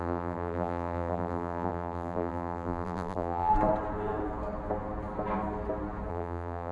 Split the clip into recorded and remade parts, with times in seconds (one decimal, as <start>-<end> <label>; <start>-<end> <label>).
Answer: 0.0-3.5 remade; 3.5-6.1 recorded; 6.1-6.7 remade